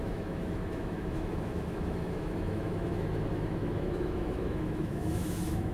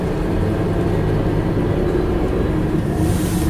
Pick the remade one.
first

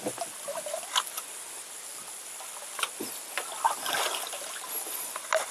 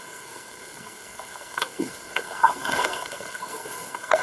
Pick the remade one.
second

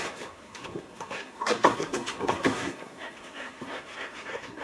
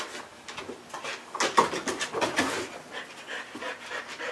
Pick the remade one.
first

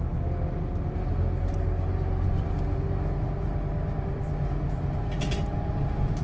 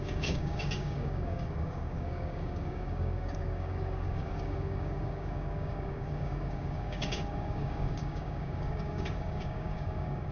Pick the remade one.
second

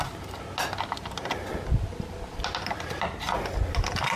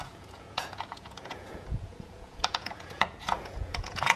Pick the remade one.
second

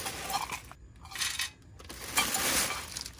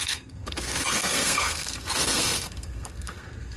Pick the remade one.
second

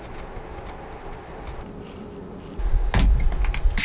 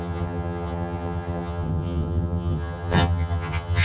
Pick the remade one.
second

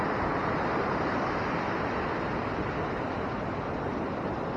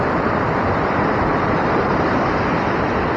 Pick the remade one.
second